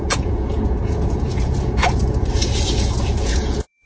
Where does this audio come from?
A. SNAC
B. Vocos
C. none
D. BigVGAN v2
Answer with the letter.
B